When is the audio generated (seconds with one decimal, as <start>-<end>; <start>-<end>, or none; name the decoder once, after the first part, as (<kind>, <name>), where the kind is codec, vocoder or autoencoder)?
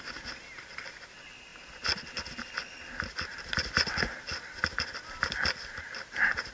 none